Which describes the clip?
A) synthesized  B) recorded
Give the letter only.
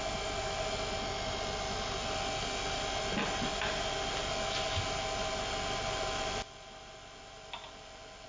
B